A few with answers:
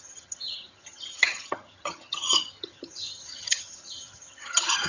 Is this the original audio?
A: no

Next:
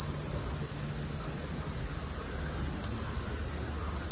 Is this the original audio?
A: yes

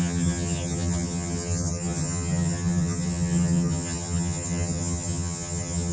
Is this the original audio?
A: no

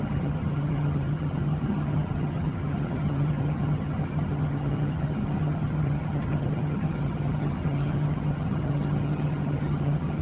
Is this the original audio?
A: no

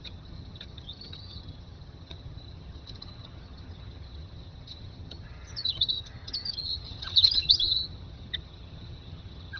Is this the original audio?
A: no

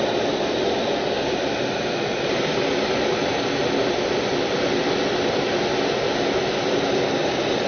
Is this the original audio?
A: yes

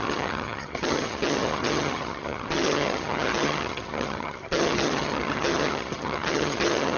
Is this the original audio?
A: no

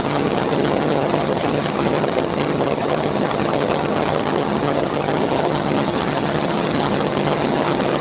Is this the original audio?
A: no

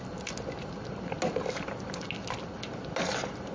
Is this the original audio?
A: yes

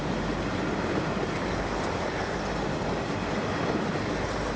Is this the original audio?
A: yes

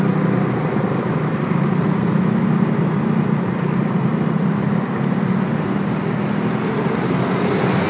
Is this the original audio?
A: yes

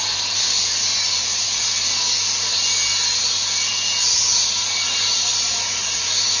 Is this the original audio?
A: yes